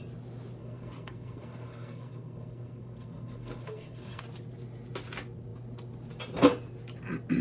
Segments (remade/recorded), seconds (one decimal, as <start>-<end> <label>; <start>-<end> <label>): 0.0-0.6 recorded; 0.6-4.2 remade; 4.2-7.4 recorded